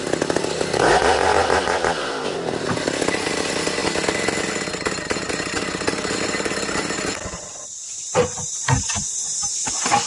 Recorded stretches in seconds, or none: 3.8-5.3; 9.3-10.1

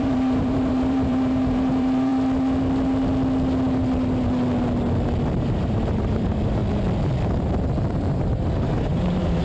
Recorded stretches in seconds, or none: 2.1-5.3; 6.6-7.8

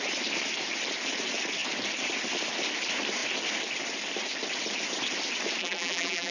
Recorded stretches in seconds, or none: 0.0-5.6